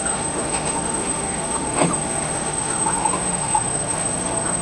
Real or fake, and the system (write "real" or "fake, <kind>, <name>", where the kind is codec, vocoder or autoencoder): fake, autoencoder, DAC-VAE